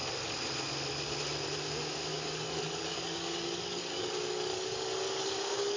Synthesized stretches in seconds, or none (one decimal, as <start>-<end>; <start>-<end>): 2.1-5.8